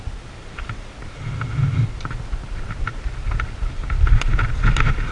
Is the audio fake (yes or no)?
no